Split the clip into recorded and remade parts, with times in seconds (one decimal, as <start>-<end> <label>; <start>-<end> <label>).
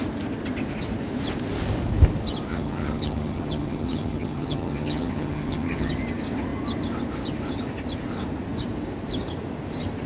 0.0-2.5 recorded; 2.5-5.9 remade; 5.9-10.1 recorded